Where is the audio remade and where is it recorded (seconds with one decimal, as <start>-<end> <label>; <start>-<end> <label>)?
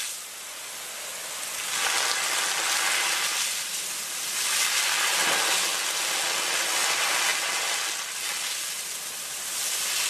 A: 0.0-10.1 recorded